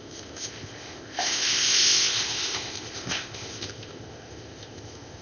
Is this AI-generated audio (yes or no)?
yes